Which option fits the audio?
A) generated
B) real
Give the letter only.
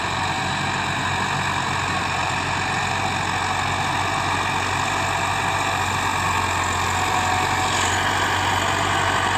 B